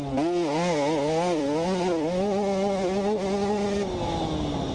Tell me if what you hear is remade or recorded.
recorded